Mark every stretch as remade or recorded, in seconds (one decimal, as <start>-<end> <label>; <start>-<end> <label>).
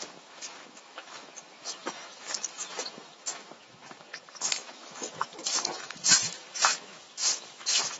0.0-8.0 remade